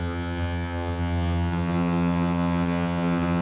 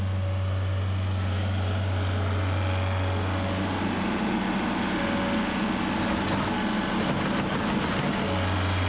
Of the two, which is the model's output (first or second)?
first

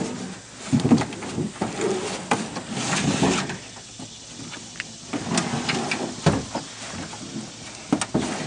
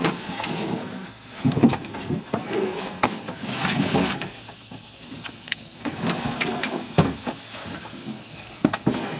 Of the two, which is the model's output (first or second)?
second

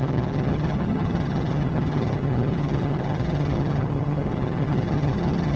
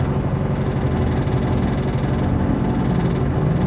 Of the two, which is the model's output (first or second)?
first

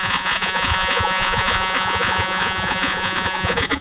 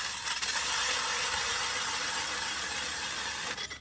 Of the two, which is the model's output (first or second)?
first